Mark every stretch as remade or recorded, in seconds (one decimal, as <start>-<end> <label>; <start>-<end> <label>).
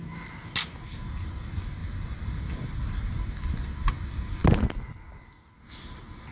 0.0-6.3 recorded